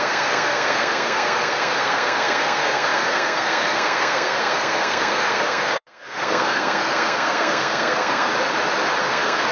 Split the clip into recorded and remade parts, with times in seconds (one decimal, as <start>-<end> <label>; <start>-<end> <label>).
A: 0.0-8.3 remade; 8.3-9.0 recorded; 9.0-9.5 remade